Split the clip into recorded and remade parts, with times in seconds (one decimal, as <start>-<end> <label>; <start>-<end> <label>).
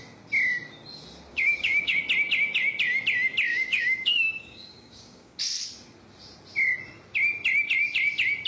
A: 0.0-1.3 recorded; 1.3-2.0 remade; 2.0-3.5 recorded; 3.5-5.4 remade; 5.4-8.5 recorded